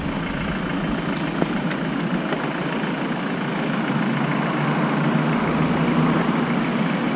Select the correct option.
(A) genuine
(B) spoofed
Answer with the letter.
A